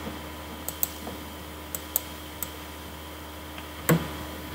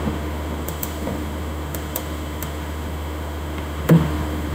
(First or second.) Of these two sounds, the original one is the first